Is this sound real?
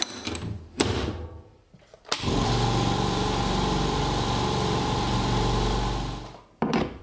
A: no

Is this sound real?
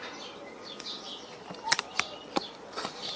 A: no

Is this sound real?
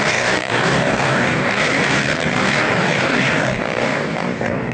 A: no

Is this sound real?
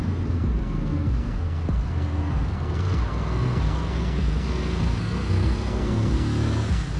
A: no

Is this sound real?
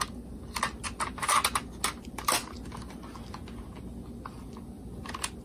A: yes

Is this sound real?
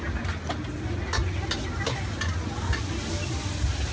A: yes